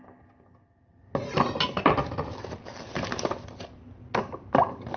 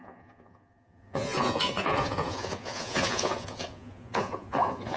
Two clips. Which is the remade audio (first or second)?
second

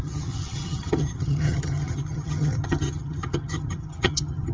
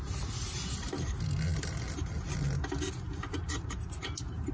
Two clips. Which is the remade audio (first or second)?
first